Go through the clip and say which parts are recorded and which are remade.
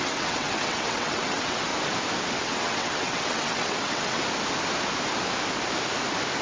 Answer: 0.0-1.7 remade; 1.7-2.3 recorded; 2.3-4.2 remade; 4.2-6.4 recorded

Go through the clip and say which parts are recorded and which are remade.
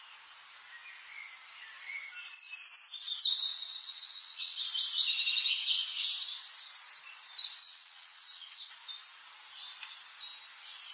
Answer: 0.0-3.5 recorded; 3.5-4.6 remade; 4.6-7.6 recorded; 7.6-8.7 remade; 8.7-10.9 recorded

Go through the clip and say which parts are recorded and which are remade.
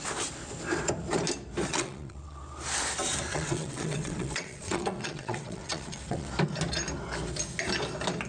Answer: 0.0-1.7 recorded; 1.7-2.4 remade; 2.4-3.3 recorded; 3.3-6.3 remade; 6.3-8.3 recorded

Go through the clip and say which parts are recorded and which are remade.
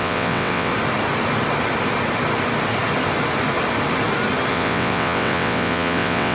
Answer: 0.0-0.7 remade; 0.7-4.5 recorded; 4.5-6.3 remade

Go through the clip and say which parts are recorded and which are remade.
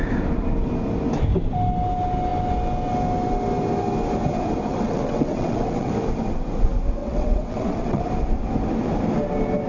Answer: 0.0-4.7 recorded; 4.7-5.9 remade; 5.9-7.0 recorded; 7.0-8.0 remade; 8.0-9.7 recorded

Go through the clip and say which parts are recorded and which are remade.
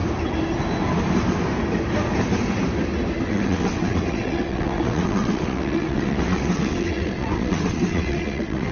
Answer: 0.0-3.3 recorded; 3.3-8.7 remade